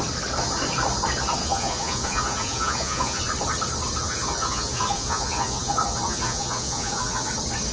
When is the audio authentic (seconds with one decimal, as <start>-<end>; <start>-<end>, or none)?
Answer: 0.0-1.4; 3.2-4.0; 7.3-7.7